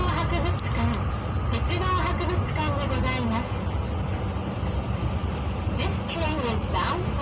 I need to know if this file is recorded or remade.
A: recorded